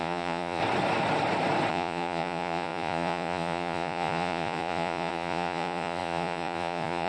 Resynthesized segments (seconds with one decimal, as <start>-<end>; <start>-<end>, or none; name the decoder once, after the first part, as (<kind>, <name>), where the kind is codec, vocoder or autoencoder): 0.0-0.6 (vocoder, Vocos); 1.7-7.1